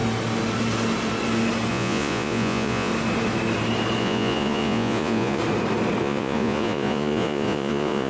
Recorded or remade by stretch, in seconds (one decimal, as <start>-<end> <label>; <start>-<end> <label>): 0.0-1.7 recorded; 1.7-2.9 remade; 2.9-4.0 recorded; 4.0-5.4 remade; 5.4-6.0 recorded; 6.0-8.1 remade